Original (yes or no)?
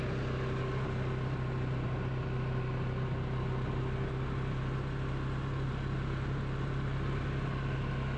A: yes